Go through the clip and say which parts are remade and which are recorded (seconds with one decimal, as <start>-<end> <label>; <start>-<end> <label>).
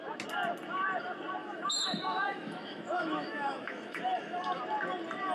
0.0-1.4 recorded; 1.4-4.6 remade; 4.6-5.3 recorded